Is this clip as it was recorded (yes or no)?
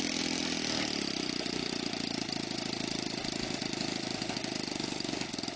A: yes